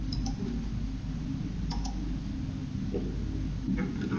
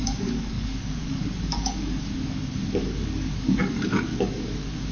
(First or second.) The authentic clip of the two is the first